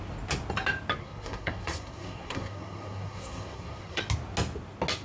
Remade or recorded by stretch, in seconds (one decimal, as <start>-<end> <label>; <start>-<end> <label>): 0.0-1.0 recorded; 1.0-4.0 remade; 4.0-5.0 recorded